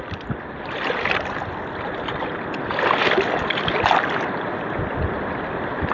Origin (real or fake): real